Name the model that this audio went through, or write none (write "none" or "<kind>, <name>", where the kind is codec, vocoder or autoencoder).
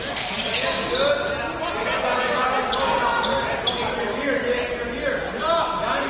none